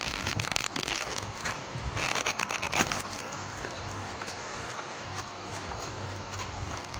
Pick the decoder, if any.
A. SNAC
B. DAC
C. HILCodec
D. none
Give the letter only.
B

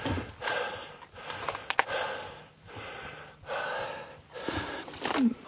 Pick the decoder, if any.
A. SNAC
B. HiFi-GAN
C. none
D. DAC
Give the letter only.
C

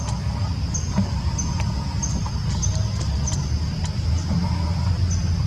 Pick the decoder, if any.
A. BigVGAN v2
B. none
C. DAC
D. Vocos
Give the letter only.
B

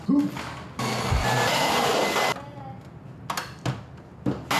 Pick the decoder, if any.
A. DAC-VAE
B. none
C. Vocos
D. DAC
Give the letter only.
B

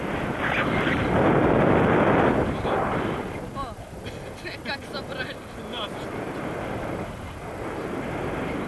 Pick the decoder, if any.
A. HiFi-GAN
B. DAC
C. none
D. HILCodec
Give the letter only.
C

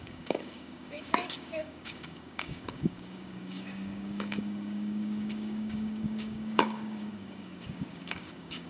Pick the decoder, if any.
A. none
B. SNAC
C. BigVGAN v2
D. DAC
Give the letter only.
D